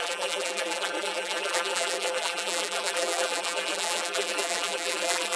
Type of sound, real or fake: fake